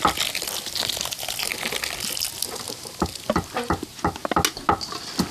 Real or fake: real